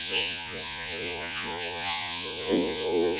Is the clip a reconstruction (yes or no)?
yes